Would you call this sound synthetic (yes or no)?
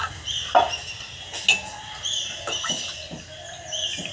no